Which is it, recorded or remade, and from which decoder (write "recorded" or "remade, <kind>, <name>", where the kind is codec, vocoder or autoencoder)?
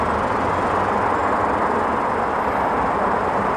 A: recorded